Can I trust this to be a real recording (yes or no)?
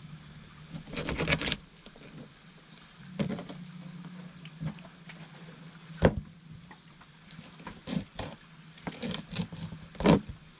yes